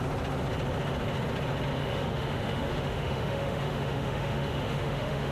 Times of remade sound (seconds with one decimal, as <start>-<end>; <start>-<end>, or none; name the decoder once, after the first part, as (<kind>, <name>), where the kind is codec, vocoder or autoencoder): 1.8-5.3 (autoencoder, DAC-VAE)